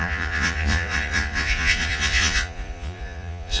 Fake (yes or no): yes